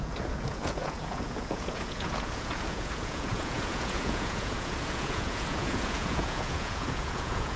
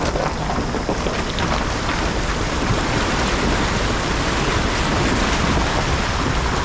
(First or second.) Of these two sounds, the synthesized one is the first